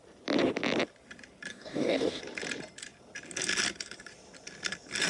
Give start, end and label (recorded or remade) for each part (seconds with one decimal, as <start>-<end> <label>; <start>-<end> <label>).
0.0-1.5 recorded; 1.5-2.2 remade; 2.2-5.1 recorded